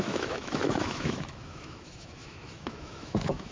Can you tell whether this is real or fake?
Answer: fake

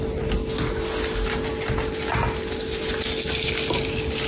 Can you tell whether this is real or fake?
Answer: real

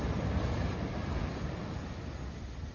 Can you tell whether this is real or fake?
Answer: real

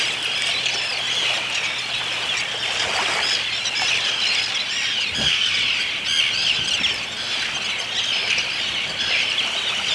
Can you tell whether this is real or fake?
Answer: real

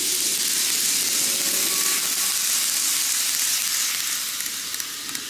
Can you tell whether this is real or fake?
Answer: real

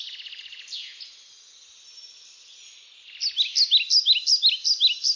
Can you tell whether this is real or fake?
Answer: real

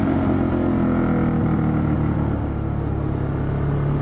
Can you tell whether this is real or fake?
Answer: real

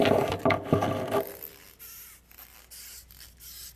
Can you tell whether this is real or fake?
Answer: real